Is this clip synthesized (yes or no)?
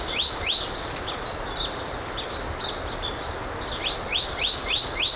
no